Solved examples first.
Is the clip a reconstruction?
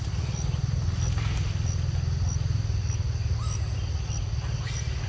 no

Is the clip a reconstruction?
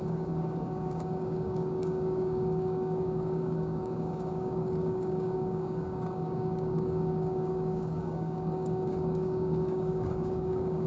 yes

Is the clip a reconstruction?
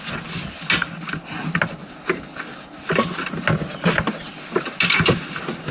no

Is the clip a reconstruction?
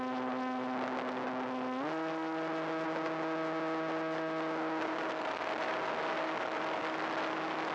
no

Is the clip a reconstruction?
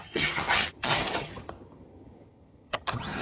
yes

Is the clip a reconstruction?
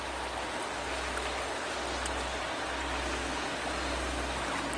no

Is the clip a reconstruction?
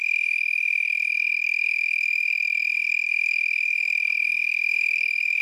yes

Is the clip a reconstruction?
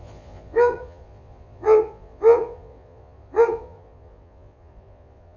yes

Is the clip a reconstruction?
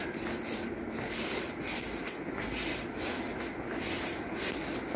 no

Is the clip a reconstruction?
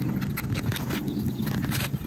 no